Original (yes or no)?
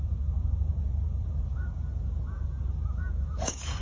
no